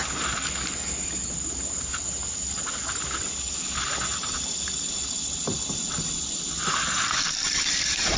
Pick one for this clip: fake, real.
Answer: real